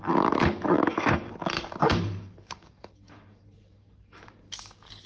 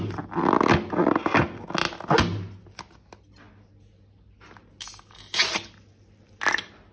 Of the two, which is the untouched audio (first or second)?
second